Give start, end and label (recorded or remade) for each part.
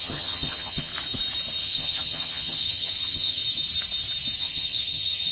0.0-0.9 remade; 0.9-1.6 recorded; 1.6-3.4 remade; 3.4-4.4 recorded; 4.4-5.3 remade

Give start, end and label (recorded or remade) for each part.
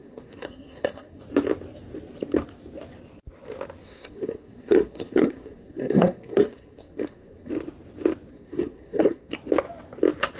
0.0-1.2 remade; 1.2-3.8 recorded; 3.8-7.5 remade; 7.5-8.3 recorded; 8.3-9.3 remade; 9.3-10.4 recorded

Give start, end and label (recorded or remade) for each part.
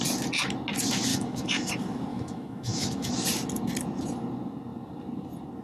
0.0-1.1 recorded; 1.1-1.7 remade; 1.7-2.1 recorded; 2.1-3.1 remade; 3.1-5.6 recorded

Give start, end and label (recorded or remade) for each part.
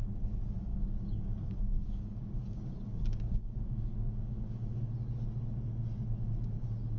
0.0-0.7 recorded; 0.7-4.9 remade; 4.9-7.0 recorded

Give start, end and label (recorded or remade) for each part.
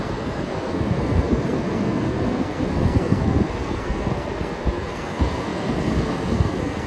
0.0-6.9 remade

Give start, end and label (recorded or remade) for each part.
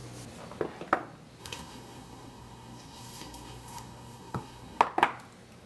0.0-1.4 recorded; 1.4-4.8 remade; 4.8-5.7 recorded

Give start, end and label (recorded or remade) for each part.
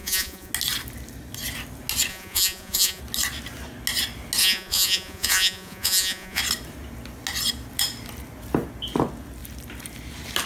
0.0-0.5 remade; 0.5-2.1 recorded; 2.1-3.0 remade; 3.0-4.4 recorded; 4.4-6.4 remade; 6.4-10.5 recorded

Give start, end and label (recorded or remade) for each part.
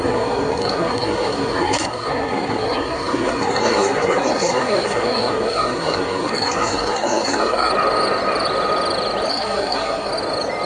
0.0-7.7 remade; 7.7-9.3 recorded; 9.3-10.1 remade; 10.1-10.7 recorded